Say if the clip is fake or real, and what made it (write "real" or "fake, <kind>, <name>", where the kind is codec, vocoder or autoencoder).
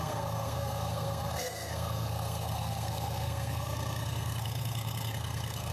fake, codec, SNAC